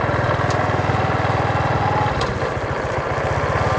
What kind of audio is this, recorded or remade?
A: recorded